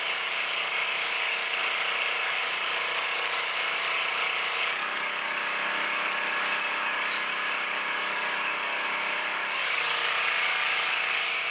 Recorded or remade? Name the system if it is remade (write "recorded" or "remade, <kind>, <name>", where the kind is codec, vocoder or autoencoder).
remade, codec, DAC